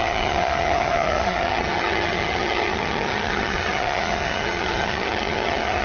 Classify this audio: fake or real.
fake